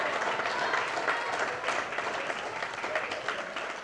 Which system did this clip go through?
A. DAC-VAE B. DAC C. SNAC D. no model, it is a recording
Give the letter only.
D